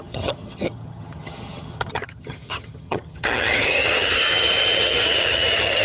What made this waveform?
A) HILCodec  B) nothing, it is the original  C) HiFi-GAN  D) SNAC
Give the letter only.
C